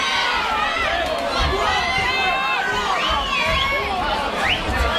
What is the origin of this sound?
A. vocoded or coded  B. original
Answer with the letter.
B